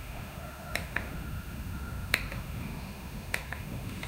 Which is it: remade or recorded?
remade